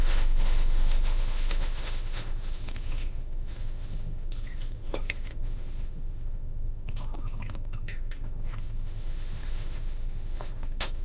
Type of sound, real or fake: fake